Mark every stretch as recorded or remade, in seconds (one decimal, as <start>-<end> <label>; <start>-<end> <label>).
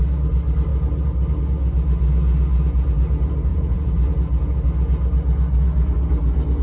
0.0-3.5 recorded; 3.5-4.1 remade; 4.1-6.6 recorded